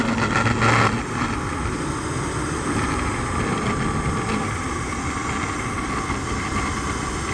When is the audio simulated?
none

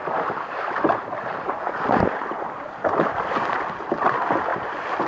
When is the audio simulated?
0.0-3.1 (vocoder, BigVGAN v2); 4.5-5.1

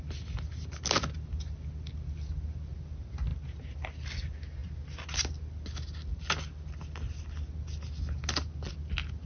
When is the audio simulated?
none

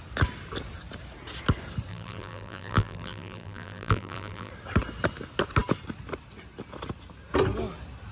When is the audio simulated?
1.9-4.5 (vocoder, BigVGAN v2)

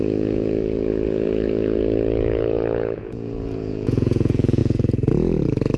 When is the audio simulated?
0.0-5.8 (vocoder, Vocos)

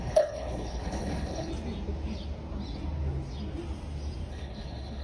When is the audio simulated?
0.0-1.5 (codec, HILCodec); 4.3-5.0

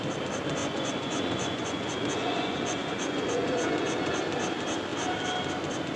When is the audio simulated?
0.6-4.2 (vocoder, Vocos)

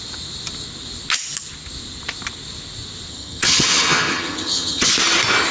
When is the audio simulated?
3.1-4.9 (vocoder, HiFi-GAN)